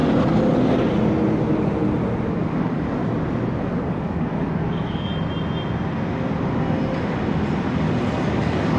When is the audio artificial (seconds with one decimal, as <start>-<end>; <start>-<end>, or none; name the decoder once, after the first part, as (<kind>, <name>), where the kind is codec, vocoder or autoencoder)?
2.3-3.0 (codec, DAC); 3.6-5.1; 8.3-8.8